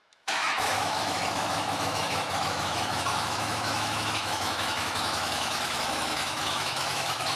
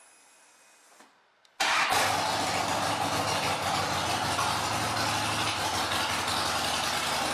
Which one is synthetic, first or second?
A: first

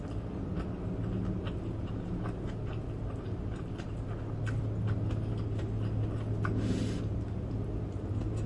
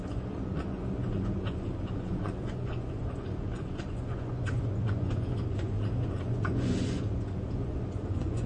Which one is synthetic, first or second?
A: second